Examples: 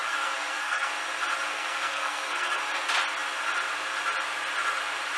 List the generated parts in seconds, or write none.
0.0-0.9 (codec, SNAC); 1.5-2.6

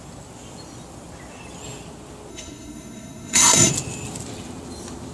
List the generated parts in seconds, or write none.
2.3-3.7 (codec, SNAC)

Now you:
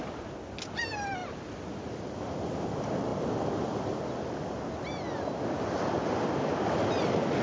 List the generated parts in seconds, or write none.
none